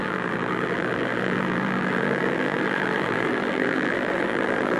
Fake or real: fake